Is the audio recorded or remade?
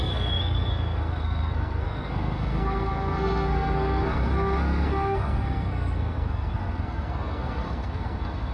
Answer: remade